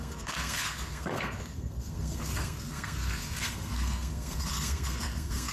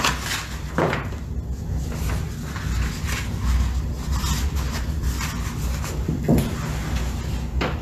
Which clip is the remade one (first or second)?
first